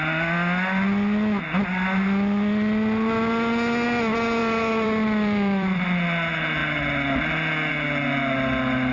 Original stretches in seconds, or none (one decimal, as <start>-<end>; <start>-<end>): 0.0-4.4; 5.8-8.9